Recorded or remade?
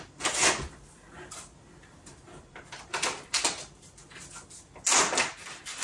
recorded